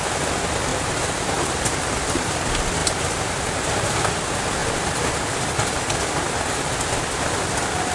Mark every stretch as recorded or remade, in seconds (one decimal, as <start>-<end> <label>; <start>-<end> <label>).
0.0-0.7 recorded; 0.7-1.7 remade; 1.7-2.8 recorded; 2.8-4.0 remade; 4.0-7.9 recorded